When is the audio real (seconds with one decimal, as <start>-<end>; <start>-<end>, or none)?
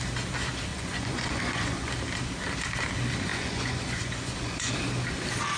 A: 0.0-0.7; 1.9-3.3; 4.7-5.6